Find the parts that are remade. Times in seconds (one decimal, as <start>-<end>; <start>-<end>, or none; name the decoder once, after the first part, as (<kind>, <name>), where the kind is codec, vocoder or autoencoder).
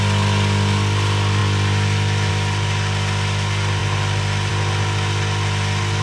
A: none